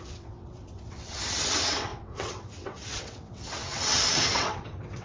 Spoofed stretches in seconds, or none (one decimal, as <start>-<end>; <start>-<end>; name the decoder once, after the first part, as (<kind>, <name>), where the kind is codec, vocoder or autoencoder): 0.0-5.0 (vocoder, WaveNeXt)